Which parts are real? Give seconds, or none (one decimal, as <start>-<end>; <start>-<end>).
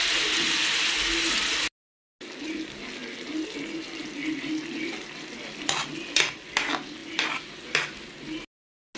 0.0-9.0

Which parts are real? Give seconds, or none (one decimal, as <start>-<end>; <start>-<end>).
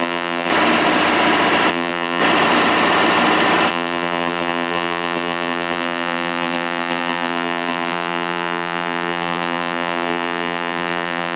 0.5-1.7; 2.2-3.7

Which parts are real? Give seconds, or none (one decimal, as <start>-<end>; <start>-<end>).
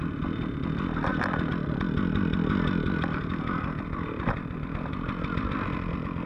none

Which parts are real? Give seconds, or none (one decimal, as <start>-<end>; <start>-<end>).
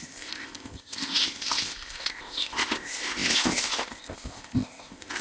none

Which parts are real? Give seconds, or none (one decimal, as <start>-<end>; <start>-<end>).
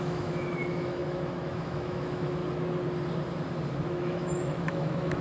2.4-3.7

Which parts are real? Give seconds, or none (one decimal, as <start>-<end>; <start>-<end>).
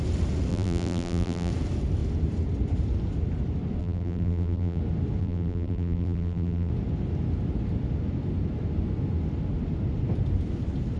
0.0-0.5; 1.5-3.8; 4.8-5.2; 6.7-11.0